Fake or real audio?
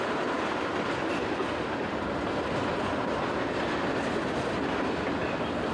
real